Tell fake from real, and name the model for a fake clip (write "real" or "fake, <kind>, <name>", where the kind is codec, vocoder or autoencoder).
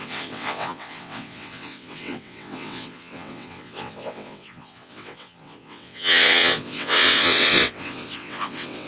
fake, vocoder, WaveNeXt